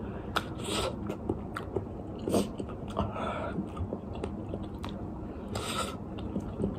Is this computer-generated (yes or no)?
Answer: no